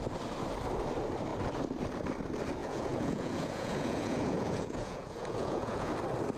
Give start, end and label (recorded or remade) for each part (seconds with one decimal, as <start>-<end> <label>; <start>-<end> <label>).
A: 0.0-2.6 recorded; 2.6-5.9 remade; 5.9-6.4 recorded